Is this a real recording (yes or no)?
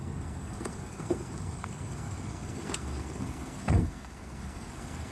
no